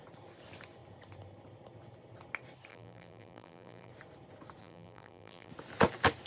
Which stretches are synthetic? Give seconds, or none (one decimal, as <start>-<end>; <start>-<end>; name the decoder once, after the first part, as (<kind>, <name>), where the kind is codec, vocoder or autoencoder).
2.7-3.9 (vocoder, BigVGAN v2); 4.6-5.5